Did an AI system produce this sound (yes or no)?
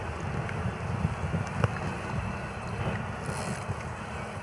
no